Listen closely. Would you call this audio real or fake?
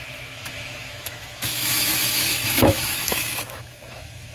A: fake